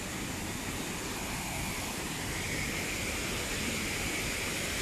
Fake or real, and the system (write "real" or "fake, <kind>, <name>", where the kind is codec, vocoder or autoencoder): real